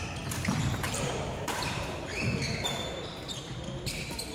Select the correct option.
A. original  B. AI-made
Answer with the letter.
B